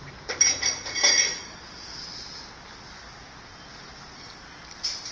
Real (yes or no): yes